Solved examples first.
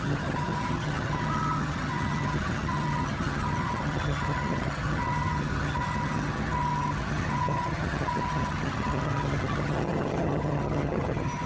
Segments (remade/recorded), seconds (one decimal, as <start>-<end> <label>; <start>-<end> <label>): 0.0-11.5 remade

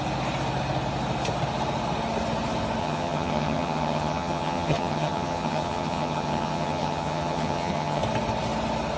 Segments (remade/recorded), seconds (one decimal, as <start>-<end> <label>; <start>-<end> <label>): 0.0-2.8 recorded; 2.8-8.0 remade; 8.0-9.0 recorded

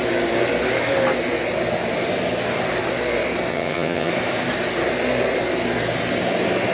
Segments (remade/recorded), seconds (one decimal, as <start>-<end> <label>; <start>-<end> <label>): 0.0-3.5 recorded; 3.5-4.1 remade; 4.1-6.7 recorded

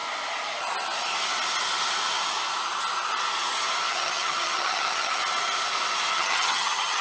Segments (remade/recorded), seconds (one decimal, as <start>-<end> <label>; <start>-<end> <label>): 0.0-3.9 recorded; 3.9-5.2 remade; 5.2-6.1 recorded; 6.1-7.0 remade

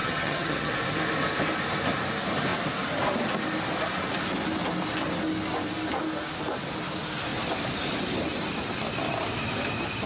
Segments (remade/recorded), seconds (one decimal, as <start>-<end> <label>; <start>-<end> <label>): 0.0-0.7 remade; 0.7-10.1 recorded

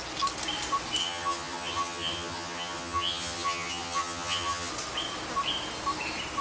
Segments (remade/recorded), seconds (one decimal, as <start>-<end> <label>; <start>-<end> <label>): 0.0-1.0 recorded; 1.0-4.7 remade; 4.7-6.4 recorded

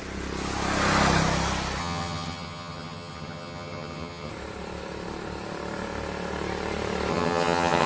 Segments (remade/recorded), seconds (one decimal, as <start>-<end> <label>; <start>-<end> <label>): 0.0-1.8 recorded; 1.8-4.3 remade; 4.3-7.1 recorded; 7.1-7.9 remade